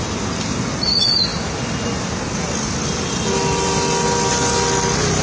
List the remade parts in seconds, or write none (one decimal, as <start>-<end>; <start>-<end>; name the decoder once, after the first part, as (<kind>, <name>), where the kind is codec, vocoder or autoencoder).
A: none